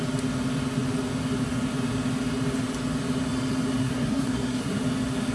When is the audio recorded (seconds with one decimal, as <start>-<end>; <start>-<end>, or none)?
0.0-3.8; 4.8-5.3